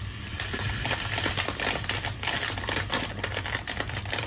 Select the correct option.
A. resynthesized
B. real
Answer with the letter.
A